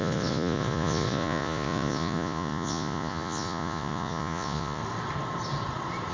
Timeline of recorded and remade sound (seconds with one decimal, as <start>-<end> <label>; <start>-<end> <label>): 0.0-4.8 remade; 4.8-6.1 recorded